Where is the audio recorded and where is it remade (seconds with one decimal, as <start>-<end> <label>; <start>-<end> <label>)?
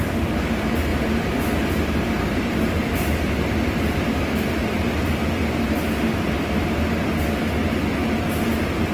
0.0-0.9 recorded; 0.9-4.8 remade; 4.8-8.9 recorded